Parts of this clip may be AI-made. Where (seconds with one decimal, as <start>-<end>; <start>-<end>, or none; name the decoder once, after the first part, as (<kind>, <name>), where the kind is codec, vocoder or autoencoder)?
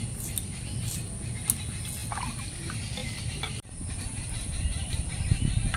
3.0-5.2 (vocoder, BigVGAN v2)